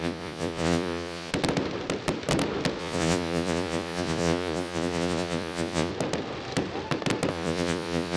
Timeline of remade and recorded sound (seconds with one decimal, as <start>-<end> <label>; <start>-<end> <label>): 0.0-1.3 remade; 1.3-2.8 recorded; 2.8-5.9 remade; 5.9-7.3 recorded; 7.3-8.2 remade